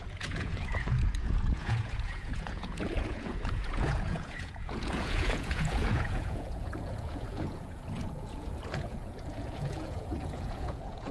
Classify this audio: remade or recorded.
remade